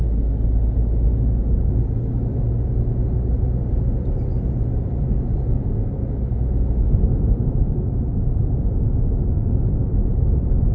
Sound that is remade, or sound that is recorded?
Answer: recorded